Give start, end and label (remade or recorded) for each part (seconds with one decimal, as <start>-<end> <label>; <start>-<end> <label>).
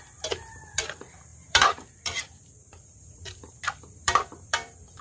0.0-5.0 remade